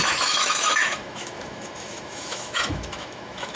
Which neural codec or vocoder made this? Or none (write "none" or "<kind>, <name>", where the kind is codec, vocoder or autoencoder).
autoencoder, DAC-VAE